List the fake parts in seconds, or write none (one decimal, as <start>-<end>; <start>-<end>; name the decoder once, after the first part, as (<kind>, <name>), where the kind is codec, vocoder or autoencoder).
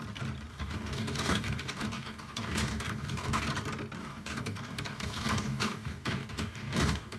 0.5-3.4 (codec, DAC); 4.0-7.2